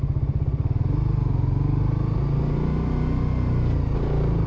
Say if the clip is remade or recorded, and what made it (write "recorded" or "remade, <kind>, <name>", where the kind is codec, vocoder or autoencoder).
recorded